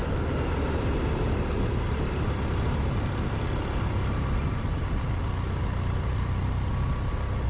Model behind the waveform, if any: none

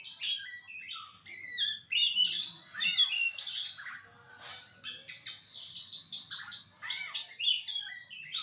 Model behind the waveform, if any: none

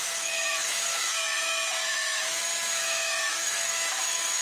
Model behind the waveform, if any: autoencoder, DAC-VAE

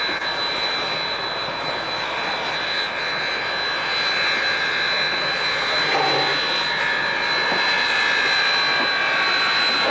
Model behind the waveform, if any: none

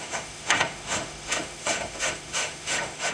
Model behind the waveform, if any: autoencoder, DAC-VAE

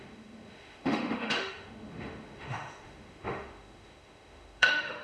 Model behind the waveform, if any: autoencoder, DAC-VAE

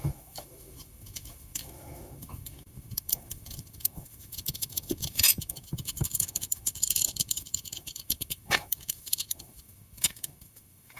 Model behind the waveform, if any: autoencoder, DAC-VAE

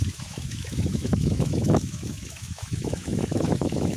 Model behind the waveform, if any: autoencoder, DAC-VAE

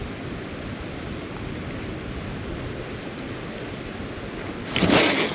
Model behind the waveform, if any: none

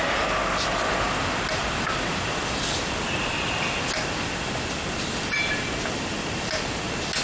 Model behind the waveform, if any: none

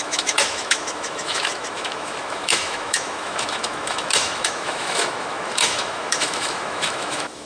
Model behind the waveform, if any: autoencoder, DAC-VAE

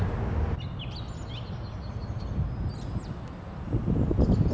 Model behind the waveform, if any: none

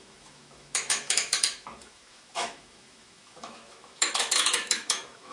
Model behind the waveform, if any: autoencoder, DAC-VAE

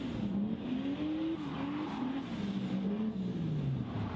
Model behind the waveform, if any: none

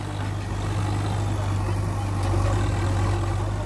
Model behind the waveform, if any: none